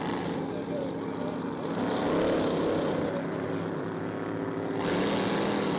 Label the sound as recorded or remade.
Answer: recorded